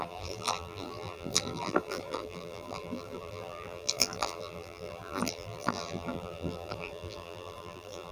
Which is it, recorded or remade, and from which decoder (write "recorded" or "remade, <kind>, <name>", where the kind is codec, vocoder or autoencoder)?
remade, vocoder, BigVGAN v2